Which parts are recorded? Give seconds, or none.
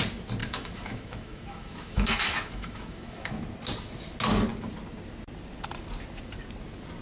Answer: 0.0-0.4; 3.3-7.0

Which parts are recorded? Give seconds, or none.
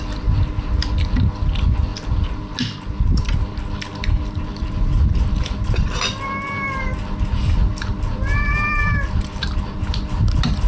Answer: 0.0-4.5; 6.0-7.7; 9.8-10.7